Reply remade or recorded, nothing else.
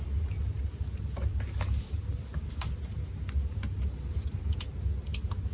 recorded